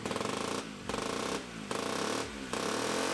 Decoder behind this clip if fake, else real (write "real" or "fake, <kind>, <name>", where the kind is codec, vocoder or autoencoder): real